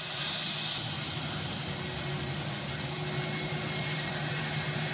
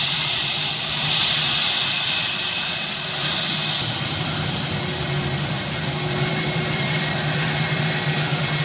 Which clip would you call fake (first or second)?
second